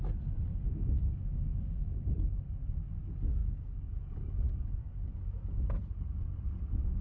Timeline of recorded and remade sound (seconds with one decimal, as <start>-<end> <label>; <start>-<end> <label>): 0.0-0.5 recorded; 0.5-2.1 remade; 2.1-3.4 recorded; 3.4-4.3 remade; 4.3-4.8 recorded; 4.8-5.6 remade; 5.6-7.0 recorded